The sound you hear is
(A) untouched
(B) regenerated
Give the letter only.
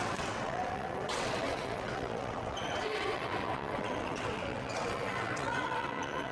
B